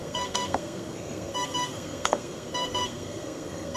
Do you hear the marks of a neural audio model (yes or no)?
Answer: yes